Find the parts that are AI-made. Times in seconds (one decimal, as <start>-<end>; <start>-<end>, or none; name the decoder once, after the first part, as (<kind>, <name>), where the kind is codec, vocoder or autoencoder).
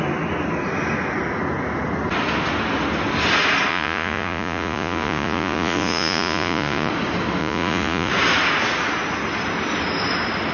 3.7-6.9 (vocoder, Vocos); 7.4-8.1